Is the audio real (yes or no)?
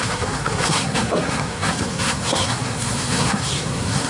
no